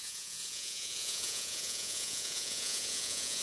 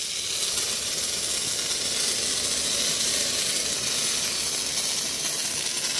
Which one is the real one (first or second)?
second